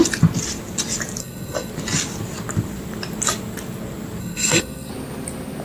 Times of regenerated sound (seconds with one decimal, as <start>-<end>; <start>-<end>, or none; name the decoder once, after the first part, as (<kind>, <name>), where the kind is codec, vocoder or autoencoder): 1.2-1.7 (codec, SNAC); 4.2-4.9